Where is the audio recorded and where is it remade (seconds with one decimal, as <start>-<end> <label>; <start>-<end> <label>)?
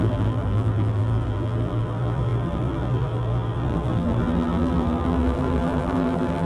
0.0-6.5 remade